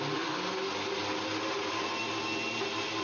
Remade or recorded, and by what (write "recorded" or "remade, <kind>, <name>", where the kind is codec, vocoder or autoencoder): recorded